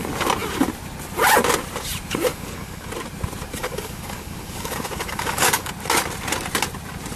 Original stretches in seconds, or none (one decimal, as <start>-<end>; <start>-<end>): 0.0-2.3; 2.9-3.6; 5.7-7.2